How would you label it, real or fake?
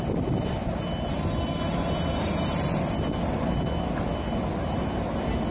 real